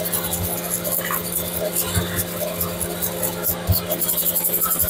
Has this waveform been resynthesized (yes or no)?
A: no